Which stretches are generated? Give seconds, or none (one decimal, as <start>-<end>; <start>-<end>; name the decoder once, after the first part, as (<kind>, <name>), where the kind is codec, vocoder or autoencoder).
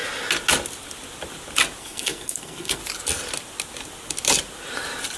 1.8-2.8 (codec, SNAC)